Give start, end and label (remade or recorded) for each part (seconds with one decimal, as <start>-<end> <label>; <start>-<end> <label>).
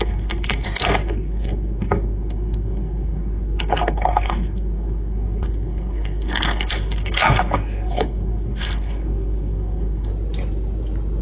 0.0-10.1 remade; 10.1-11.2 recorded